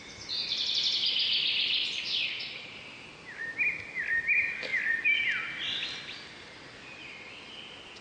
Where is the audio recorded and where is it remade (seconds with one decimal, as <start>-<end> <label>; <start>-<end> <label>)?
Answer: 0.0-1.8 recorded; 1.8-2.8 remade; 2.8-6.8 recorded; 6.8-7.3 remade; 7.3-8.0 recorded